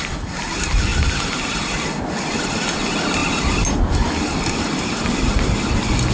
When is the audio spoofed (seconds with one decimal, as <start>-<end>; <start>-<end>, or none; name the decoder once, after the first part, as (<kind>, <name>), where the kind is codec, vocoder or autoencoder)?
none